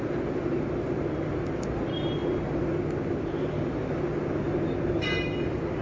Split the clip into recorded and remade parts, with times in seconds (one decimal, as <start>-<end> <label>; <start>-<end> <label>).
0.0-5.8 recorded